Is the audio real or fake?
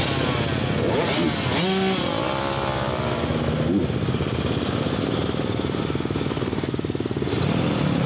real